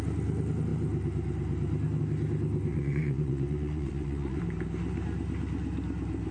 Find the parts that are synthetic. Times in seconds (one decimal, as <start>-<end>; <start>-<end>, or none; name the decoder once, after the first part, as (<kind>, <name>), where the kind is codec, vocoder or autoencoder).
2.7-4.4 (vocoder, Vocos)

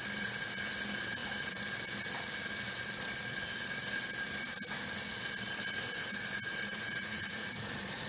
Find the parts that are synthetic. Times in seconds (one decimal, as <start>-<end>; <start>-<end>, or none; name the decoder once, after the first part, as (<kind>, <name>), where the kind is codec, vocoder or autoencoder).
6.7-8.1 (vocoder, Vocos)